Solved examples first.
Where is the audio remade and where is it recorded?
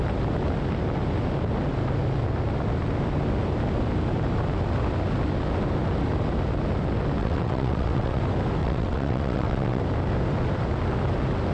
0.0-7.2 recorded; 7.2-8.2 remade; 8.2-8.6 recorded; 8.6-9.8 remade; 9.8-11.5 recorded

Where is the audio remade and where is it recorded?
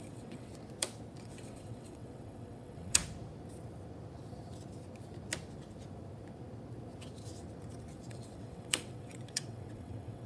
0.0-0.5 remade; 0.5-1.2 recorded; 1.2-3.0 remade; 3.0-8.1 recorded; 8.1-10.3 remade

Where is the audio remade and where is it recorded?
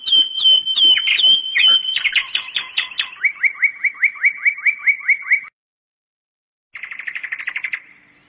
0.0-8.3 recorded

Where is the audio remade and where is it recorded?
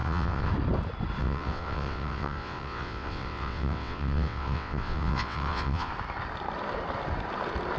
0.0-0.5 remade; 0.5-1.2 recorded; 1.2-5.9 remade; 5.9-7.8 recorded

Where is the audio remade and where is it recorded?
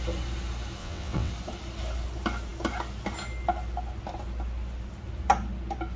0.0-0.8 recorded; 0.8-1.3 remade; 1.3-6.0 recorded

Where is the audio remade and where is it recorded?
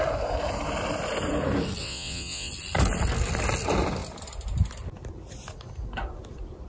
0.0-1.8 recorded; 1.8-2.5 remade; 2.5-6.7 recorded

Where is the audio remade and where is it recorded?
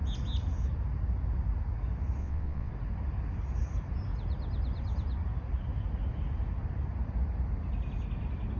0.0-2.2 recorded; 2.2-2.7 remade; 2.7-8.6 recorded